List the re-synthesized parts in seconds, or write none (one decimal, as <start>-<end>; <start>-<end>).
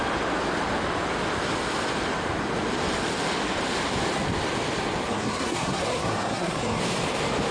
5.1-6.8